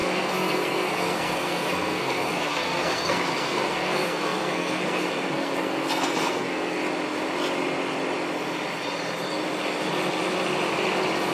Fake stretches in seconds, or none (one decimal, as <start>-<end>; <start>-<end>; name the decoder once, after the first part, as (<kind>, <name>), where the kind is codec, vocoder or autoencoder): 0.0-6.8 (codec, SNAC)